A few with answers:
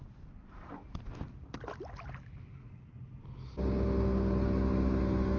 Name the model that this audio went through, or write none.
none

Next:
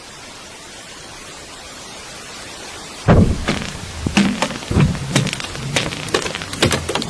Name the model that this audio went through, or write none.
none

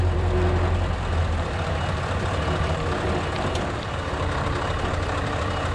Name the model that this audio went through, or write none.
vocoder, BigVGAN v2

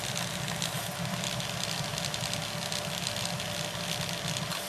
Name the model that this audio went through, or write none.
none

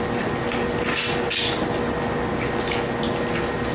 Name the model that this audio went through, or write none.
none